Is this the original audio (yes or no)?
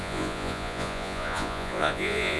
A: no